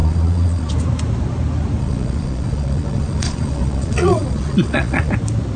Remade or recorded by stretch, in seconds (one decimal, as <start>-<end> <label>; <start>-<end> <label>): 0.0-0.7 remade; 0.7-1.8 recorded; 1.8-5.1 remade; 5.1-5.6 recorded